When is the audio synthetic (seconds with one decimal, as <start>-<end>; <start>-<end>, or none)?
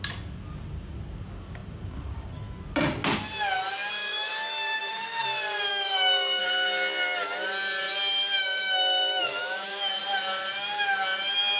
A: 4.0-5.2; 5.7-6.4; 8.4-10.0